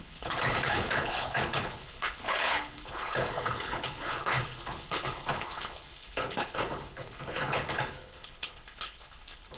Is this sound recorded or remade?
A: remade